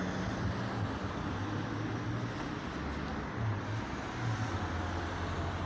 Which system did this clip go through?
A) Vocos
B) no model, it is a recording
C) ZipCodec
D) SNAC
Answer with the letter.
B